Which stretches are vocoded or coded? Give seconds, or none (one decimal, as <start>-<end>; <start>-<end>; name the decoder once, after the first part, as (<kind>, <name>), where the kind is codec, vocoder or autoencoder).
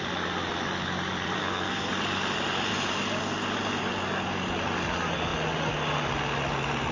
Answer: 1.4-1.9 (codec, SNAC)